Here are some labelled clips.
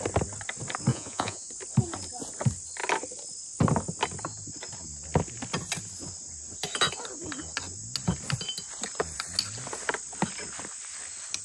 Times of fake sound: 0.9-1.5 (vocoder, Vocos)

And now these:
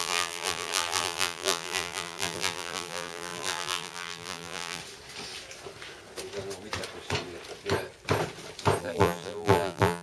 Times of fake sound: 0.0-4.8 (vocoder, BigVGAN v2); 8.8-10.0

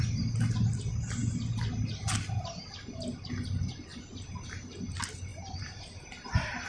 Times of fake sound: 5.3-6.3 (vocoder, BigVGAN v2)

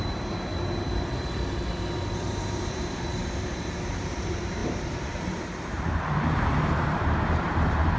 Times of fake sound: 0.0-0.5 (vocoder, BigVGAN v2); 2.2-8.0

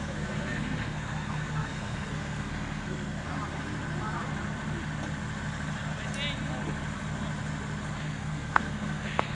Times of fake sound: 0.0-3.3 (codec, SNAC); 8.0-9.3

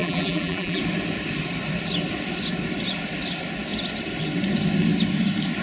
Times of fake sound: 0.0-0.8 (vocoder, BigVGAN v2)